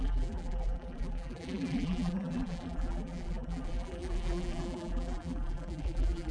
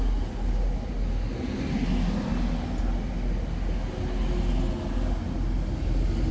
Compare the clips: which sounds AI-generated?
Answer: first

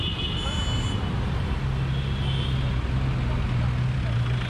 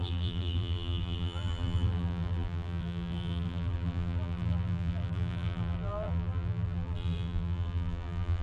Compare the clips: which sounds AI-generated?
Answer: second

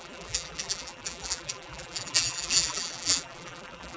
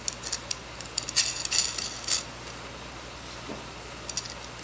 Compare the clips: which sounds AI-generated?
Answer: first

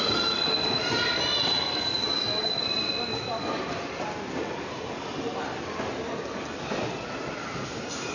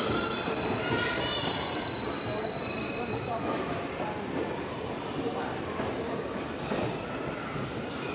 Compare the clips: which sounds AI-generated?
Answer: second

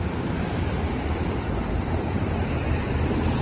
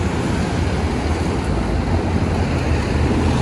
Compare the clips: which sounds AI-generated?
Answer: first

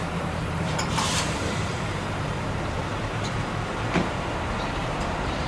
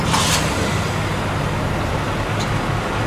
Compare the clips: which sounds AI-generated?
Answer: first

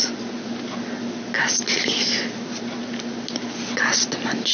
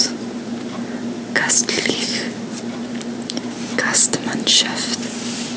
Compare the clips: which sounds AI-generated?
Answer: second